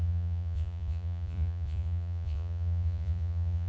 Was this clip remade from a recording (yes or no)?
yes